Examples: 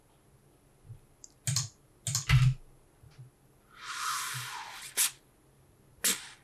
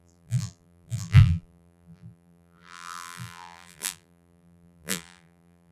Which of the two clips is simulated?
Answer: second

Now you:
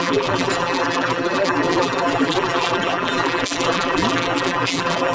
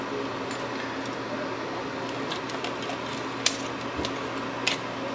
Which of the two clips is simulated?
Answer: first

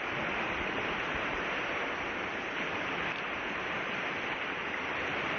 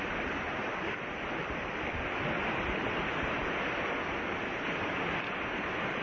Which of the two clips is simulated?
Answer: first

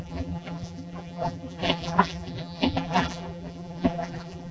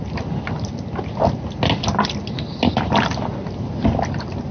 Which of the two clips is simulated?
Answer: first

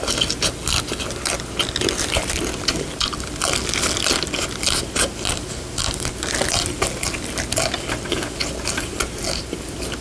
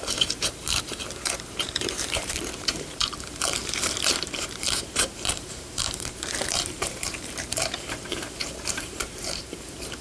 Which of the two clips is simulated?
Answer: second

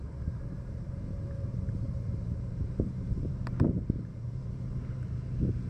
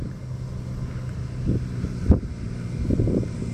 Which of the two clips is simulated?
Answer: first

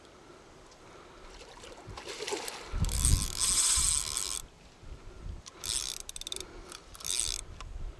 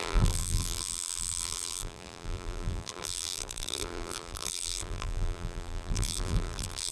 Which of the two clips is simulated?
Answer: second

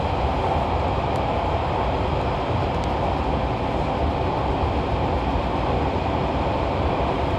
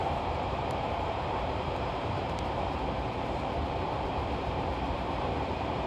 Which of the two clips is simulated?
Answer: second